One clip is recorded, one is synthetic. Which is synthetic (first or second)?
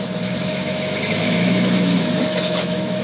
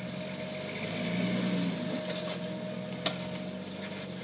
first